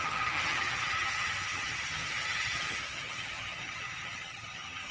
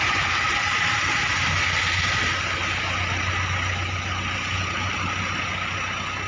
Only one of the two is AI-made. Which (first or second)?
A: first